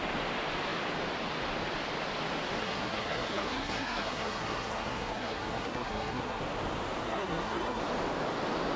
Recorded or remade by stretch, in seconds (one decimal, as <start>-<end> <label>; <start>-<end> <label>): 0.0-2.6 recorded; 2.6-6.4 remade; 6.4-7.0 recorded; 7.0-7.8 remade; 7.8-8.8 recorded